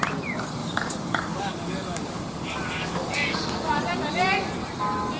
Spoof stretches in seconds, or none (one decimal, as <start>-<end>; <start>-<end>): 0.6-3.7